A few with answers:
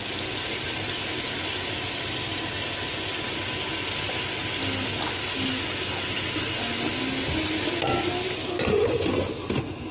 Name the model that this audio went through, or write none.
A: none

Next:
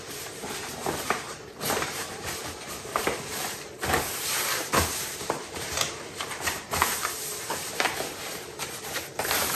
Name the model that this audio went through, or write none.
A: vocoder, BigVGAN v2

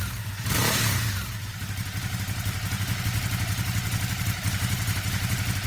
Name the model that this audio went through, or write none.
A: none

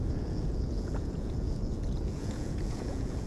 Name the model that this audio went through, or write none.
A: vocoder, Vocos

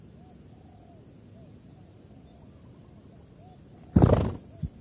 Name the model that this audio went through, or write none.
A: none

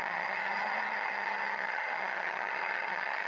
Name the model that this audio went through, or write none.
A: vocoder, HiFi-GAN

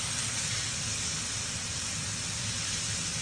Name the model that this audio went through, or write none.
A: none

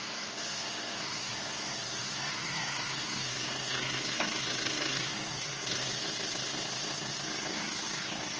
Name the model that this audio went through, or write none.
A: codec, SNAC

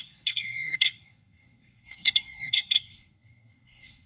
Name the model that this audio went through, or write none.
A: codec, SNAC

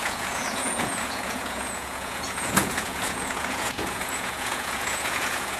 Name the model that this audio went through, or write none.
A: vocoder, Vocos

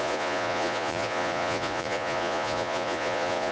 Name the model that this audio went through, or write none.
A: vocoder, Vocos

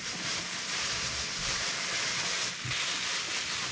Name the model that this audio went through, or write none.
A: none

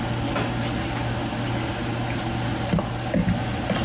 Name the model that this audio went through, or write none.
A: none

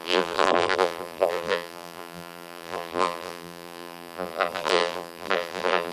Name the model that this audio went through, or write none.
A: vocoder, BigVGAN v2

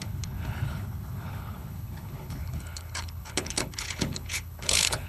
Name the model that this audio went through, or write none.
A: codec, HILCodec